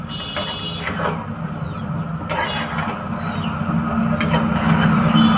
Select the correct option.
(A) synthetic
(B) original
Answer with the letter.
B